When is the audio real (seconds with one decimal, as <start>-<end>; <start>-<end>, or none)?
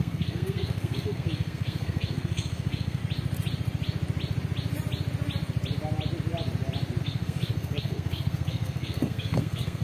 3.0-7.0